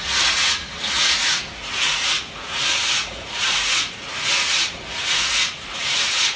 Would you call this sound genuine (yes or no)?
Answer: no